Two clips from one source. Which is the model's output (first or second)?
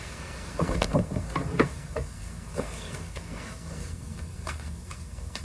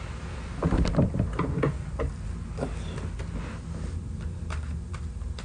first